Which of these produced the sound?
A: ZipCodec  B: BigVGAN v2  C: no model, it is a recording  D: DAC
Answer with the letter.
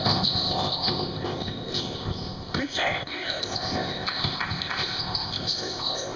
A